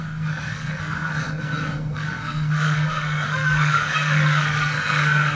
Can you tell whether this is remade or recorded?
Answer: remade